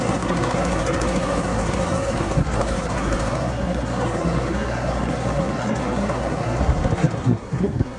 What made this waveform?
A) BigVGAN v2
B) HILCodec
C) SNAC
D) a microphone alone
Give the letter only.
C